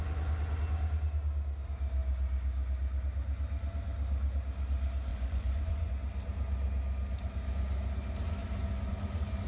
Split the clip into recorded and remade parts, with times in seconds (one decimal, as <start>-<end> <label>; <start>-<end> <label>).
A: 0.0-5.1 recorded; 5.1-5.9 remade; 5.9-9.5 recorded